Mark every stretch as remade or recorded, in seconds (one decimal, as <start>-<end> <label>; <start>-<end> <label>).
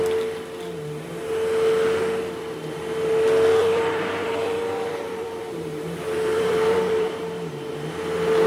0.0-3.6 recorded; 3.6-7.2 remade; 7.2-8.5 recorded